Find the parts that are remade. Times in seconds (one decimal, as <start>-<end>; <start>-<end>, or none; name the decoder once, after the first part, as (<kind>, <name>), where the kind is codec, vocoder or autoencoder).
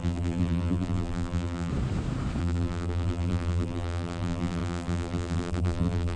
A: 0.0-1.7 (vocoder, BigVGAN v2); 2.4-6.2